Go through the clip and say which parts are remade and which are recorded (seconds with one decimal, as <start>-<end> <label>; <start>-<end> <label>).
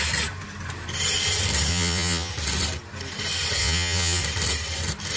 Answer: 0.0-1.7 recorded; 1.7-2.3 remade; 2.3-3.6 recorded; 3.6-4.2 remade; 4.2-5.2 recorded